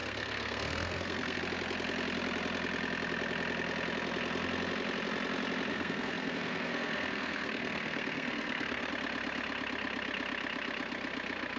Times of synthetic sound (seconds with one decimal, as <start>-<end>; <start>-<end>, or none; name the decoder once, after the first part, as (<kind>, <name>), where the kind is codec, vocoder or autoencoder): 0.0-1.4 (codec, SNAC); 5.7-8.9